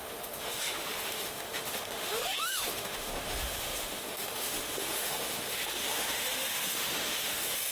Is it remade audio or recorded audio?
remade